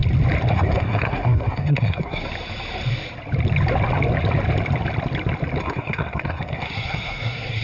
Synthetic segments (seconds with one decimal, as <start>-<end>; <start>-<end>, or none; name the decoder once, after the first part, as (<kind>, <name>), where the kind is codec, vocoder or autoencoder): 0.5-2.2 (codec, SNAC); 5.6-7.6